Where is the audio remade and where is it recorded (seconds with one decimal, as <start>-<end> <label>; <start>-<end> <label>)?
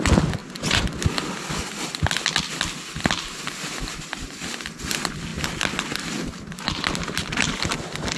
0.0-8.2 recorded